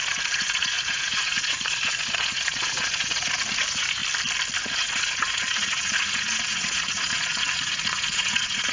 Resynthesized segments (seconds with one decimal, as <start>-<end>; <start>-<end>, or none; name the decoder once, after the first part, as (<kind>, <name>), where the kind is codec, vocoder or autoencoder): 0.0-4.0 (vocoder, Vocos); 4.6-8.7